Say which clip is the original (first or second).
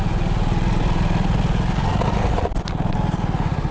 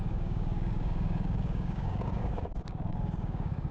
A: first